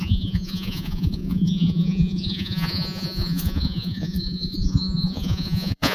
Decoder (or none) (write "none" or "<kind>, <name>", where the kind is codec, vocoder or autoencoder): vocoder, Vocos